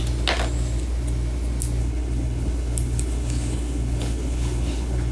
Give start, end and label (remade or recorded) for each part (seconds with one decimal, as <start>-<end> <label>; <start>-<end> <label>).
0.0-1.8 recorded; 1.8-5.1 remade

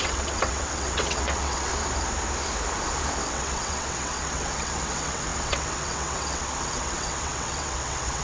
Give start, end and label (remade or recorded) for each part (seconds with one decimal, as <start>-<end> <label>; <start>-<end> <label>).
0.0-1.7 remade; 1.7-3.3 recorded; 3.3-8.2 remade

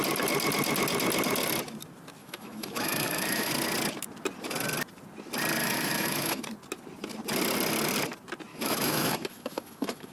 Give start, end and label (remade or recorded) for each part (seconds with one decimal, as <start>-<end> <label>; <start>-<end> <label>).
0.0-2.2 recorded; 2.2-3.5 remade; 3.5-5.6 recorded; 5.6-6.4 remade; 6.4-8.5 recorded; 8.5-10.1 remade

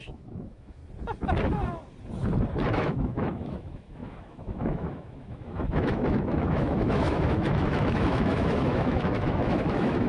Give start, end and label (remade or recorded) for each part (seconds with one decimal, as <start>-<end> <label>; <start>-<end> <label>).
0.0-0.8 remade; 0.8-2.7 recorded; 2.7-10.1 remade